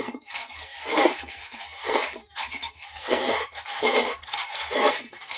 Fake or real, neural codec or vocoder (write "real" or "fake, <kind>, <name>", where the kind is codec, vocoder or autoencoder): fake, codec, SNAC